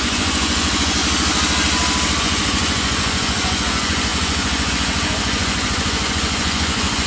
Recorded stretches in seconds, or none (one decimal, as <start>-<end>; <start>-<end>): 1.0-2.2